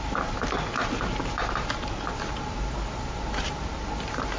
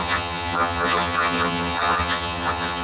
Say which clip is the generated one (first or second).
second